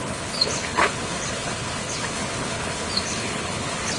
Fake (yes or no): yes